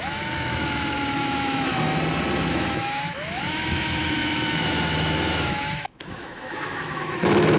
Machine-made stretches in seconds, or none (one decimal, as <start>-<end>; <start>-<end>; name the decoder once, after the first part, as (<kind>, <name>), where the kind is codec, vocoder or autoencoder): 0.0-1.7 (autoencoder, DAC-VAE); 2.5-7.6